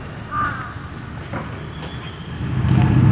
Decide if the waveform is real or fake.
real